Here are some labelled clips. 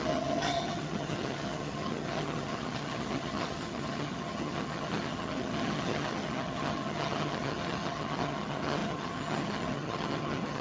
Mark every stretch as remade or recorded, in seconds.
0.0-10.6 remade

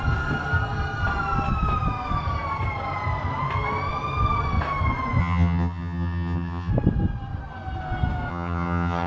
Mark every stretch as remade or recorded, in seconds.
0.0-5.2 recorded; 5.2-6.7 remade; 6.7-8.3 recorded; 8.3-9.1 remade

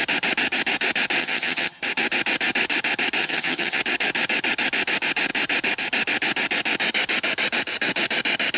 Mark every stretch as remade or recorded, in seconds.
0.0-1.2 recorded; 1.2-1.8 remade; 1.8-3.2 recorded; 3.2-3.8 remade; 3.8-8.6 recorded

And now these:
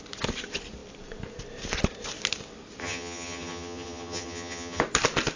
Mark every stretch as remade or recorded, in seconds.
0.0-2.8 recorded; 2.8-4.8 remade; 4.8-5.4 recorded

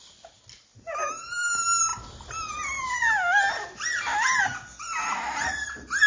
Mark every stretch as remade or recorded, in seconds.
0.0-6.1 recorded

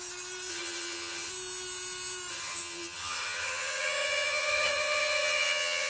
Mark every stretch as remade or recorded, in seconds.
0.0-0.5 recorded; 0.5-1.3 remade; 1.3-2.3 recorded; 2.3-5.9 remade